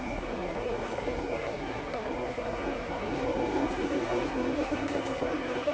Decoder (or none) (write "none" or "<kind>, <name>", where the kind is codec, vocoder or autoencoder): codec, SNAC